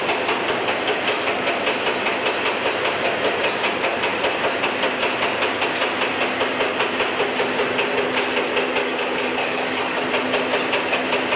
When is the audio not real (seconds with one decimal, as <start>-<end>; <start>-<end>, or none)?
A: 8.8-10.0